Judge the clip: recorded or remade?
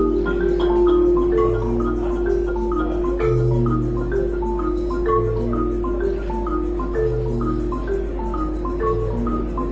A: recorded